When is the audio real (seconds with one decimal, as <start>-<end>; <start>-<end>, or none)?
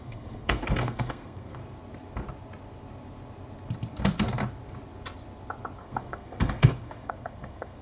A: 1.6-5.8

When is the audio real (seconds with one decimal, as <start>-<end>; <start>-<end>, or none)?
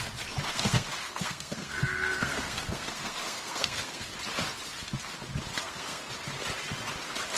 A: 0.0-0.5; 4.1-5.5; 6.1-7.4